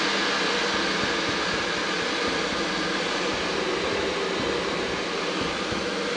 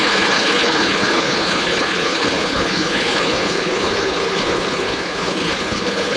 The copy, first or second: second